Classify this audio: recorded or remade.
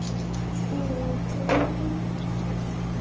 recorded